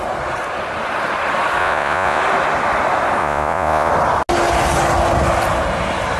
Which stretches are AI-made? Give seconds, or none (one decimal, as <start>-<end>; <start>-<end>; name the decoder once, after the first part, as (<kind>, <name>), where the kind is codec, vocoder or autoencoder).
1.6-2.2 (vocoder, Vocos); 3.2-3.9